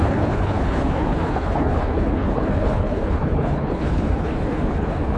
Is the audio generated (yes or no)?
yes